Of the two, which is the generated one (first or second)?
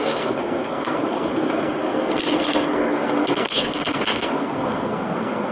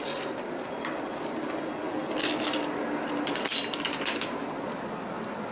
first